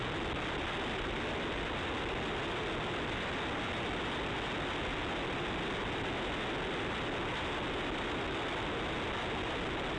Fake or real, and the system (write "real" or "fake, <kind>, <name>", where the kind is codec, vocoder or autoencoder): real